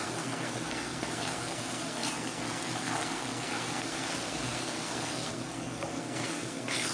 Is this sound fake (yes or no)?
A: yes